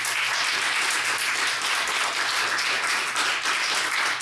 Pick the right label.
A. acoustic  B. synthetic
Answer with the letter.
A